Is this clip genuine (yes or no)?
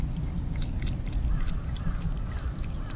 yes